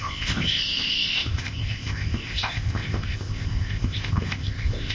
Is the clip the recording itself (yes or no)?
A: no